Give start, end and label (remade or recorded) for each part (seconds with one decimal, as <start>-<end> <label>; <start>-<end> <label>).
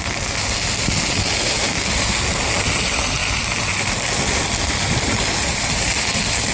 0.0-6.5 recorded